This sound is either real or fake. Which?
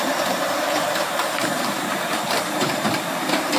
fake